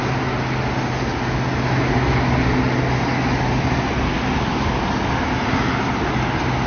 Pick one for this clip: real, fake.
real